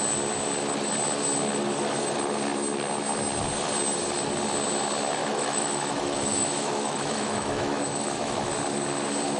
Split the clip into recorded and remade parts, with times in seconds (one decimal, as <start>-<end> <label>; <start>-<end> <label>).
0.0-5.2 recorded; 5.2-8.5 remade; 8.5-9.4 recorded